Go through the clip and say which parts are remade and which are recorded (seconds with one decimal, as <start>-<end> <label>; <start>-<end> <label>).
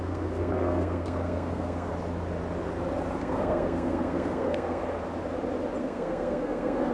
0.0-1.9 remade; 1.9-3.2 recorded; 3.2-4.8 remade; 4.8-5.8 recorded; 5.8-6.9 remade